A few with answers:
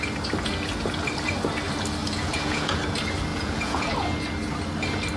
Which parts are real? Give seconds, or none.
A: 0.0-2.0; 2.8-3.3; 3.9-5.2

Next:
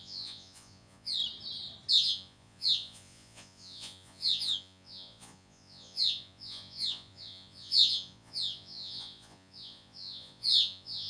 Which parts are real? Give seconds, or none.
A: 1.2-1.9

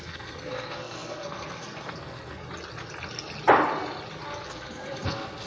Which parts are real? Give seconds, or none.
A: 2.4-4.5

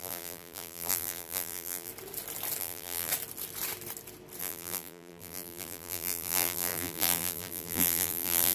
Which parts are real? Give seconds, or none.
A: 1.9-2.6; 3.1-4.4

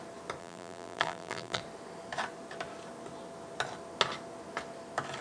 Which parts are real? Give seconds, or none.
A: 0.0-0.4; 1.6-5.2

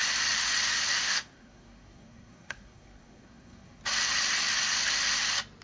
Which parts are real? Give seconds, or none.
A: 0.0-1.0; 3.8-5.6